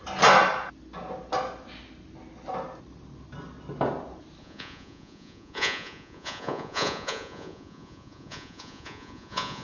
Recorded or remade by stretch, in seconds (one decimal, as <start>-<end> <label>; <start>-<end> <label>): 0.0-4.4 recorded; 4.4-9.6 remade